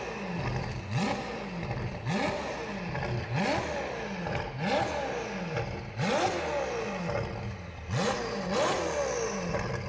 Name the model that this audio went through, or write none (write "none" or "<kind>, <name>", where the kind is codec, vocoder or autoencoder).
none